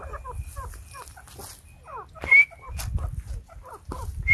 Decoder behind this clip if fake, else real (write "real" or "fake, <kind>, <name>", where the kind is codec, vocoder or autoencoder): real